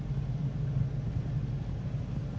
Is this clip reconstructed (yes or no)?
no